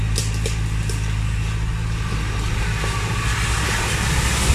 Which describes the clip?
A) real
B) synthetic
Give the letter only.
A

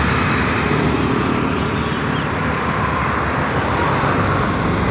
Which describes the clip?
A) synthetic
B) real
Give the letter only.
B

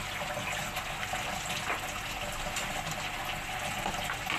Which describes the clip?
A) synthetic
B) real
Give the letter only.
B